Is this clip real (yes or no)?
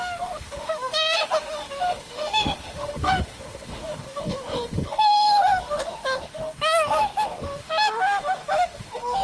no